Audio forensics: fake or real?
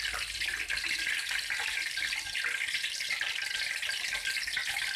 fake